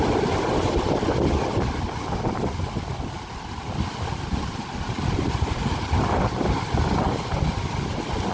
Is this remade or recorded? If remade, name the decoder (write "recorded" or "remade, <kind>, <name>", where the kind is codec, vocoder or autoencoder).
recorded